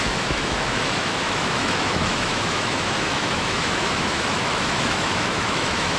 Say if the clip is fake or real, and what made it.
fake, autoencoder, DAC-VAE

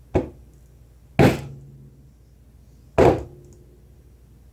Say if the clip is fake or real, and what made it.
real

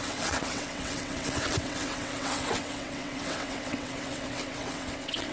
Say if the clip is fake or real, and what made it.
fake, vocoder, WaveNeXt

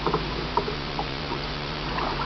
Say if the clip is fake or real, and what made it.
fake, vocoder, Vocos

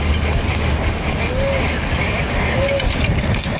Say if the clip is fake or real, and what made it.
real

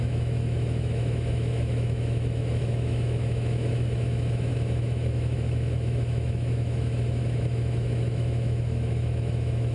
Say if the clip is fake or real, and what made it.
fake, autoencoder, DAC-VAE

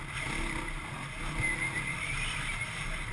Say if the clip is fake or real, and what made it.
real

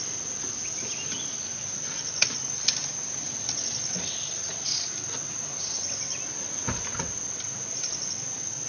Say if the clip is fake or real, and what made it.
real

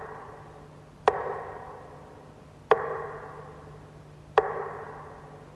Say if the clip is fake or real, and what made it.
real